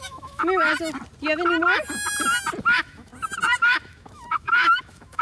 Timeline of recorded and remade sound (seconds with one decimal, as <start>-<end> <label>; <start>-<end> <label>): 0.0-0.7 remade; 0.7-2.6 recorded; 2.6-3.1 remade; 3.1-3.6 recorded; 3.6-5.2 remade